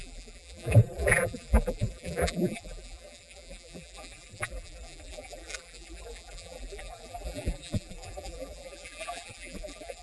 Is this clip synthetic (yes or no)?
yes